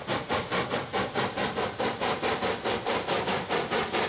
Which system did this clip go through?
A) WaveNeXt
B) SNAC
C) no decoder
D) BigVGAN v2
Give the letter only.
C